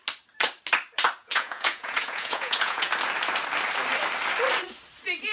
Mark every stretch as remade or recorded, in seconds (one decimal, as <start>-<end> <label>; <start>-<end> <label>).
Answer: 0.0-1.2 recorded; 1.2-2.9 remade; 2.9-5.3 recorded